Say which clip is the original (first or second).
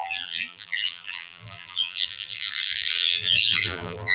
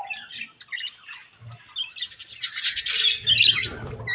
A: second